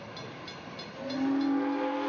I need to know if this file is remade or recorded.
recorded